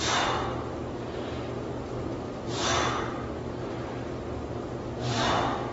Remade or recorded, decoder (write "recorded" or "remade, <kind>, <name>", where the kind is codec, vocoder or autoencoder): recorded